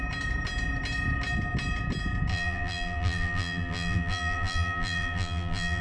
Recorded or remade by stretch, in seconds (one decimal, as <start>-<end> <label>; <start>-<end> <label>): 0.0-2.3 recorded; 2.3-5.8 remade